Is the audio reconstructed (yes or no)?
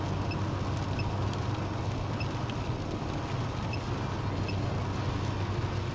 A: no